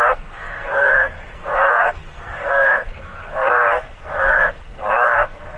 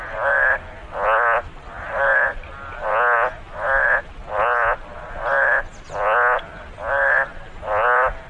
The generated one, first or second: first